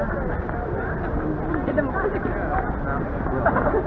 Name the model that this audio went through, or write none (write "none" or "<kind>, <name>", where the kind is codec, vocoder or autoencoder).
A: none